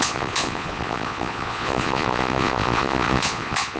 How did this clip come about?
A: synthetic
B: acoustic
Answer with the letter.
A